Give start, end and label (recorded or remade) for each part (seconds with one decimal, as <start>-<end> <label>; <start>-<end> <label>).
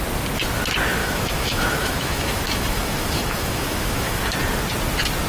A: 0.0-1.0 recorded; 1.0-4.2 remade; 4.2-5.3 recorded